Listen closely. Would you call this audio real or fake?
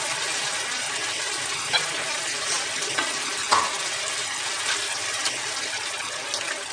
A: real